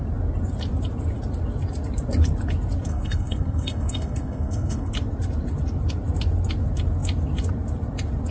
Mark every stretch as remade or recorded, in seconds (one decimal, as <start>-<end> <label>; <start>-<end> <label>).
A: 0.0-2.9 recorded; 2.9-4.9 remade; 4.9-8.3 recorded

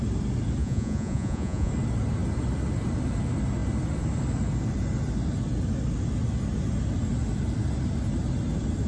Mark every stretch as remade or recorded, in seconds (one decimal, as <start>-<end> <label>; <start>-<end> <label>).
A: 0.0-0.6 recorded; 0.6-1.7 remade; 1.7-8.9 recorded

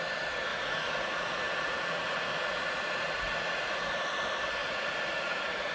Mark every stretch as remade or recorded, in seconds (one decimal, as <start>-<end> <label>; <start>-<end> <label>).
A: 0.0-0.5 recorded; 0.5-3.9 remade; 3.9-4.6 recorded; 4.6-5.7 remade